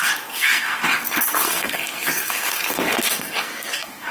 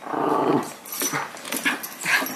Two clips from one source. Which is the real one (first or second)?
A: second